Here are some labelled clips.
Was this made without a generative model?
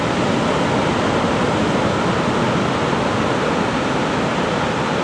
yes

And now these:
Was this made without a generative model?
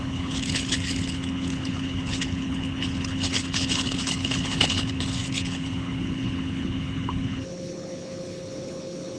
no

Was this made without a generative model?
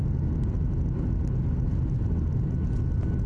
yes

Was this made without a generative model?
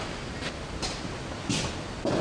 yes